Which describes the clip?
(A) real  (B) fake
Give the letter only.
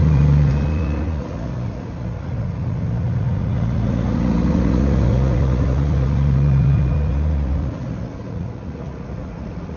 B